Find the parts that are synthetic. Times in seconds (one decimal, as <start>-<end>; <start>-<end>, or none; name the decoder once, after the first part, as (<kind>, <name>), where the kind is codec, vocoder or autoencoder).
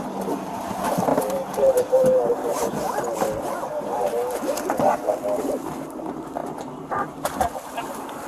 none